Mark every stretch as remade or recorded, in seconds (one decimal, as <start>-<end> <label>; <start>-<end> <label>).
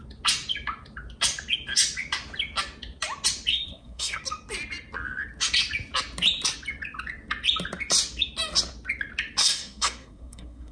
0.0-3.5 recorded; 3.5-4.2 remade; 4.2-9.4 recorded; 9.4-10.7 remade